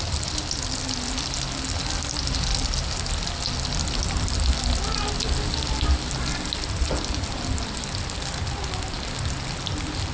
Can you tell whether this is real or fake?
real